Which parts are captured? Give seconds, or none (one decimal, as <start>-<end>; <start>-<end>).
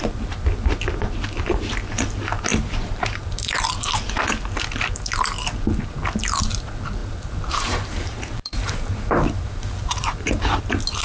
0.0-2.5; 3.5-7.0; 10.6-11.0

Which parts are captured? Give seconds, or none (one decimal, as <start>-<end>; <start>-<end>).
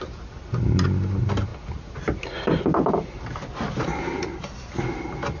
0.0-5.4